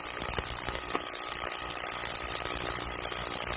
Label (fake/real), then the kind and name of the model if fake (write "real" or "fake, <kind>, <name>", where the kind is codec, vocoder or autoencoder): real